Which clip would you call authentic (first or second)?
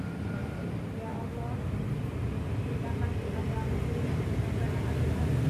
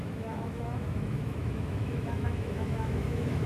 first